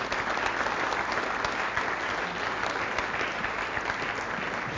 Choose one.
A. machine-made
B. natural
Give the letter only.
B